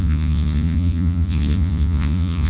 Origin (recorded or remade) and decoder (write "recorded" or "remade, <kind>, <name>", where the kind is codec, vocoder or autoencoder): remade, vocoder, Vocos